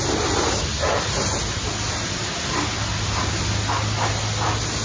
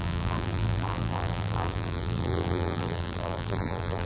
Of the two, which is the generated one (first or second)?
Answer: second